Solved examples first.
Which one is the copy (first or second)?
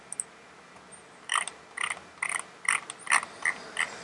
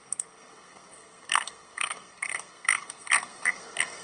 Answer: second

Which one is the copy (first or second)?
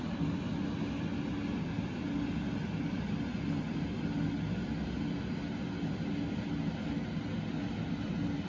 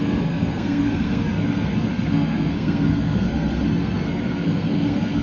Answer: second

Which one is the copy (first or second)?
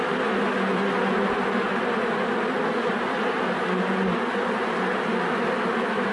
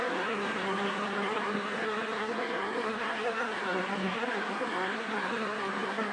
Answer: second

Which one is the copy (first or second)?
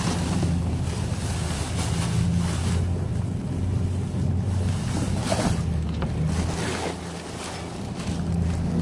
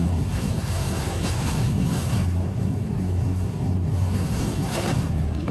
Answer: second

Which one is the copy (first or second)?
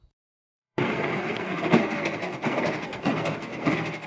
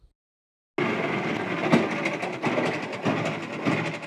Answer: first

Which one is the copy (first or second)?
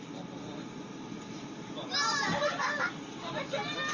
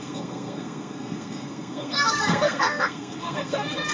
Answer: second